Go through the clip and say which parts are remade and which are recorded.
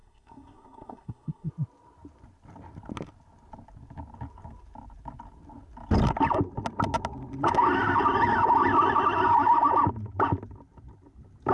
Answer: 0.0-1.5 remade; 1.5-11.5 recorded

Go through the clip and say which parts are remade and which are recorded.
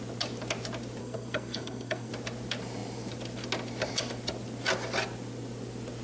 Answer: 0.0-1.0 recorded; 1.0-2.1 remade; 2.1-6.0 recorded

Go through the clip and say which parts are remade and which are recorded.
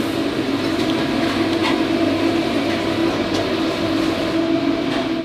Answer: 0.0-5.2 recorded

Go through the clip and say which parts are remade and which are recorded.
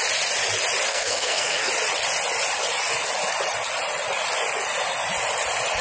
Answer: 0.0-0.9 recorded; 0.9-1.7 remade; 1.7-5.8 recorded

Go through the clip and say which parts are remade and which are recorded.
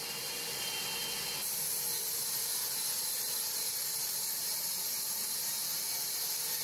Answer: 0.0-6.6 recorded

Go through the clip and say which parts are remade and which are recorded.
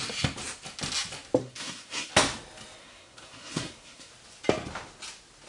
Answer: 0.0-1.4 recorded; 1.4-2.1 remade; 2.1-2.8 recorded; 2.8-4.1 remade; 4.1-5.5 recorded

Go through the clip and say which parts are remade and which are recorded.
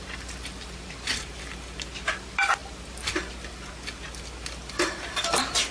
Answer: 0.0-5.7 recorded